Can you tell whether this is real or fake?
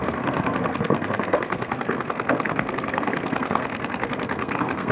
fake